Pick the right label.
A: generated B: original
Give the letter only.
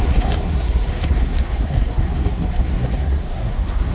A